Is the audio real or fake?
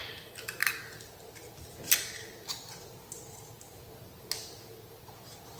real